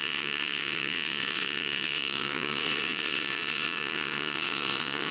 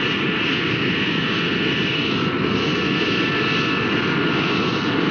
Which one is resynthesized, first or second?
first